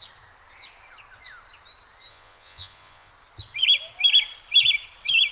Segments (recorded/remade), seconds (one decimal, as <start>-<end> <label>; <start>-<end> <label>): 0.0-2.1 recorded; 2.1-3.1 remade; 3.1-5.3 recorded